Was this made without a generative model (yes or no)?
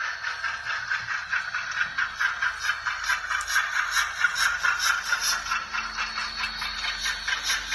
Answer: yes